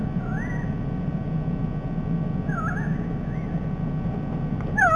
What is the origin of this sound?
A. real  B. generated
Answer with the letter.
A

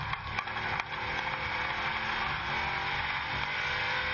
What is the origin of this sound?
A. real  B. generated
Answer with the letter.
A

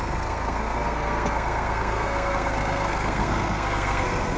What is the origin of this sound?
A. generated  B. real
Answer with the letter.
A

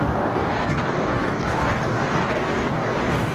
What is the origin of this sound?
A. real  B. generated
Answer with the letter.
B